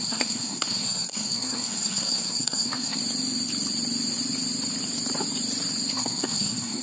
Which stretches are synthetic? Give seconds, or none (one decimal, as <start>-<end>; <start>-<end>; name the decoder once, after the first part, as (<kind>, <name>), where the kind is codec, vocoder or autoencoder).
0.0-3.0 (codec, SNAC); 5.9-6.8